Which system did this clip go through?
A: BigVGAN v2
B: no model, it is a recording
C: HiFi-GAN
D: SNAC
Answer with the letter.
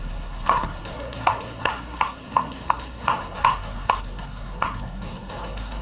D